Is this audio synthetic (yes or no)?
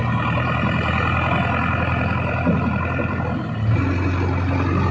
no